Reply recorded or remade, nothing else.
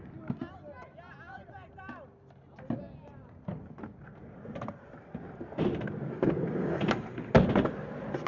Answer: recorded